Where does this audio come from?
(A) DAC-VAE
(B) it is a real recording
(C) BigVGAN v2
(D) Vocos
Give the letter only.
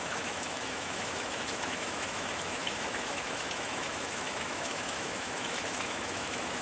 A